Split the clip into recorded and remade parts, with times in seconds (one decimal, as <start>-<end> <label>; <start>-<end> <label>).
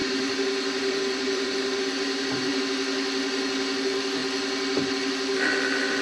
0.0-2.6 remade; 2.6-6.0 recorded